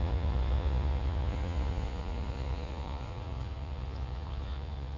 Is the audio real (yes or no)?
no